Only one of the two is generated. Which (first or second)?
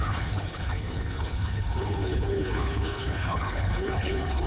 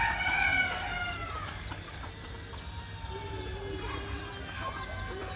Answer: first